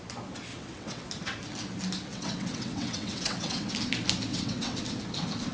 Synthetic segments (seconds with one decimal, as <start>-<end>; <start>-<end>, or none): 0.5-1.1; 2.1-3.7; 4.3-4.8